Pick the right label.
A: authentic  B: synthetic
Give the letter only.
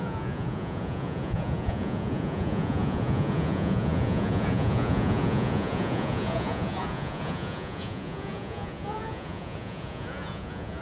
B